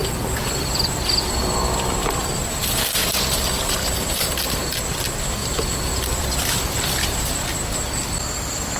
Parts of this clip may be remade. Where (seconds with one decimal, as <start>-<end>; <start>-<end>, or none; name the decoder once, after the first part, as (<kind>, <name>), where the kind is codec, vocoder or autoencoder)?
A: 0.0-1.0 (vocoder, BigVGAN v2); 2.2-4.8; 5.4-7.3